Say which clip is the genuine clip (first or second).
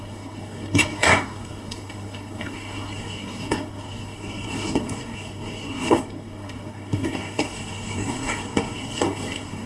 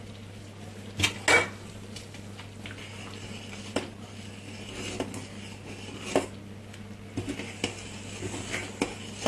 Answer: second